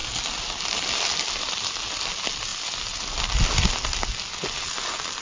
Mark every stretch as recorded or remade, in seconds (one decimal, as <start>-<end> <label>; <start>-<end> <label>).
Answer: 0.0-5.2 recorded